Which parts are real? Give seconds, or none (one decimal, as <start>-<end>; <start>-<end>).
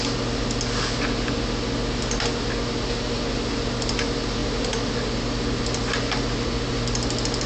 0.0-7.5